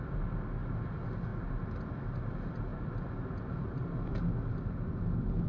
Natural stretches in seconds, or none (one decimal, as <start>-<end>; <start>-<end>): 0.0-5.5